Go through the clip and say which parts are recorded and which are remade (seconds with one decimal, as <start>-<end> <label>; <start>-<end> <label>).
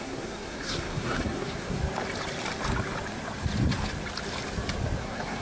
0.0-1.8 remade; 1.8-5.0 recorded; 5.0-5.4 remade